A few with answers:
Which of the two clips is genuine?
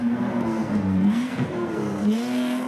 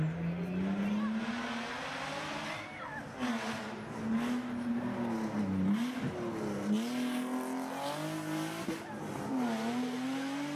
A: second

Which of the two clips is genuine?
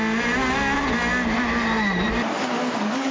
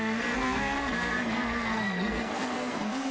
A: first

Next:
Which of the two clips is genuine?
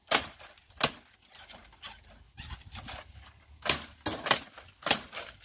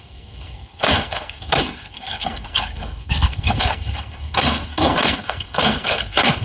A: first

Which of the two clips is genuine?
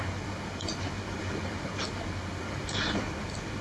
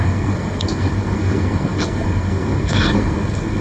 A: first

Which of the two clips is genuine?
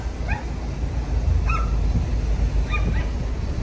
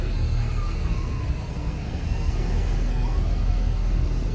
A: first